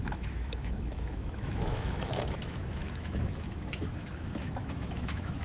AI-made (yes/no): yes